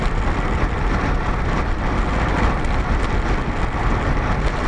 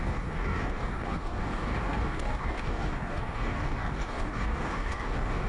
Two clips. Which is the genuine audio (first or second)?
first